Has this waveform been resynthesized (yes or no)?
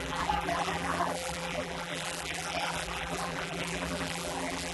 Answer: yes